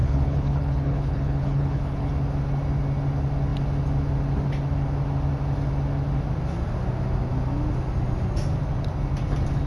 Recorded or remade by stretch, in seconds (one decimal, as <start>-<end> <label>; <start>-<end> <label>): 0.0-2.1 remade; 2.1-9.7 recorded